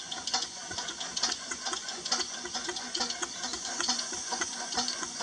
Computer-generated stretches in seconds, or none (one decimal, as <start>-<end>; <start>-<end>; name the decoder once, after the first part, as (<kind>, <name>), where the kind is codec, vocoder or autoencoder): 0.0-5.2 (vocoder, Vocos)